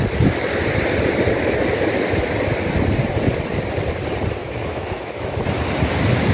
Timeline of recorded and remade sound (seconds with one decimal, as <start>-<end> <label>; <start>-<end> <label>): 0.0-4.4 recorded; 4.4-5.4 remade; 5.4-6.3 recorded